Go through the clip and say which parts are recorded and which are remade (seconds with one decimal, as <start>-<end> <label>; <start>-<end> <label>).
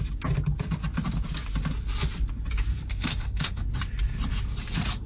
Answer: 0.0-2.9 recorded; 2.9-3.6 remade; 3.6-5.1 recorded